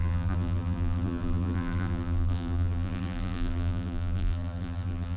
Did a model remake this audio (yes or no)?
yes